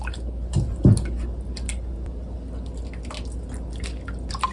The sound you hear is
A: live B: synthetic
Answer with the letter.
A